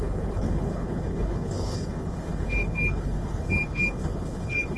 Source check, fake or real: fake